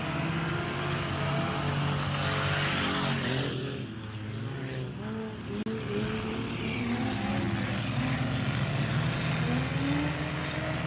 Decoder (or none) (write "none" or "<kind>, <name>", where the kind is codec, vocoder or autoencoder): none